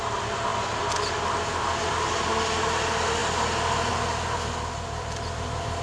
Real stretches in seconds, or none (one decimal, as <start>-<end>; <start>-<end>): 0.0-5.8